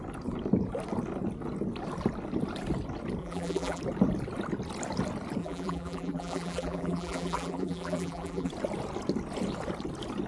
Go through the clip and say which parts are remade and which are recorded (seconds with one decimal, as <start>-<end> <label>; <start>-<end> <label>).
0.0-3.2 recorded; 3.2-3.8 remade; 3.8-5.4 recorded; 5.4-8.5 remade; 8.5-10.3 recorded